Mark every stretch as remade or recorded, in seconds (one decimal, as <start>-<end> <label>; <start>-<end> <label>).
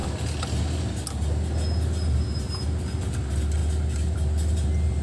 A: 0.0-5.0 recorded